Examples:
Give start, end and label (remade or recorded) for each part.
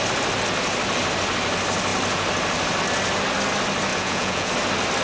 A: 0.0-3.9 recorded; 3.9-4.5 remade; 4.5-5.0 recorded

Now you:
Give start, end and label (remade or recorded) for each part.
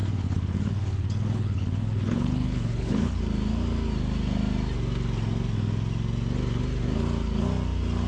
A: 0.0-3.2 remade; 3.2-8.1 recorded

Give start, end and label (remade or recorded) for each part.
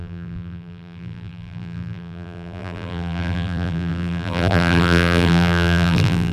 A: 0.0-6.3 remade